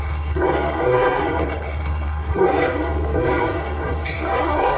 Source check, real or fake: fake